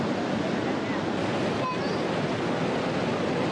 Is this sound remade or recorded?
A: recorded